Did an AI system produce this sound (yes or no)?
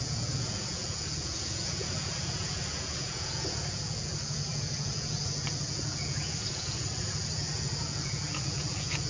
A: yes